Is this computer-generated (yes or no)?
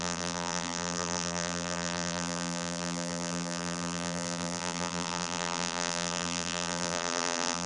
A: yes